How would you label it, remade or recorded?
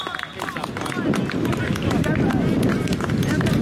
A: recorded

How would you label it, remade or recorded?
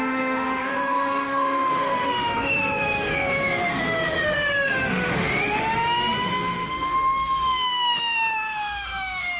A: remade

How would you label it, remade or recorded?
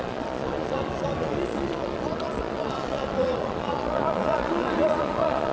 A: remade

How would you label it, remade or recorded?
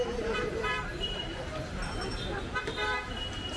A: remade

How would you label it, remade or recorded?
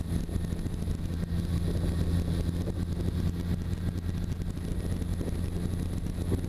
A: recorded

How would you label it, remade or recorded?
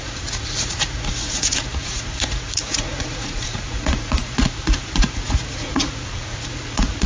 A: remade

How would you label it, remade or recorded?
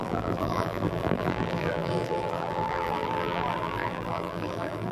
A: remade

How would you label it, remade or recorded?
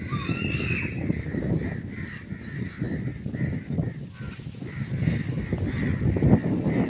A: recorded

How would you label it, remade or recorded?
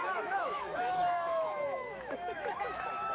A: remade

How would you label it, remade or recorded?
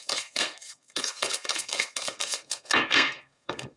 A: remade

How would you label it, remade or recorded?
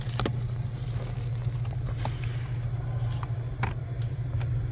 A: recorded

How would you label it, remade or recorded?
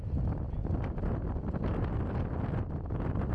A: recorded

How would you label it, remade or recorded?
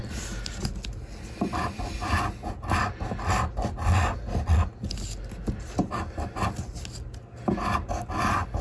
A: recorded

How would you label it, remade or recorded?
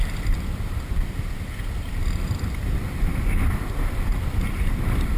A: recorded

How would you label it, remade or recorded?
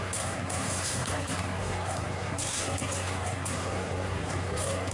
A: remade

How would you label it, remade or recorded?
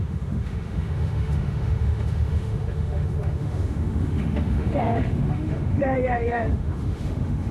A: remade